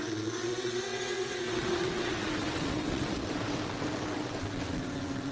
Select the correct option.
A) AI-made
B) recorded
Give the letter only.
A